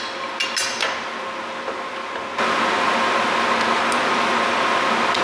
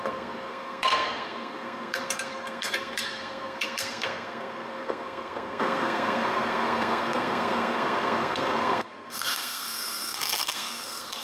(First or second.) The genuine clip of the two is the first